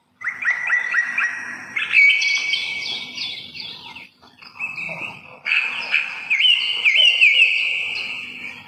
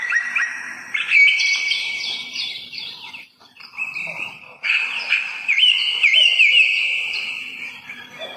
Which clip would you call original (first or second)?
first